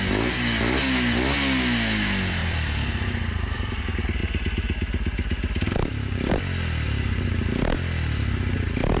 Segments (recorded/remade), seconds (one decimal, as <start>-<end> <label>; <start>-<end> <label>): 0.0-2.4 recorded; 2.4-3.8 remade; 3.8-9.0 recorded